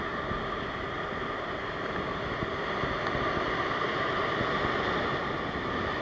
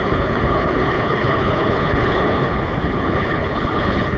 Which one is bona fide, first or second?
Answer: first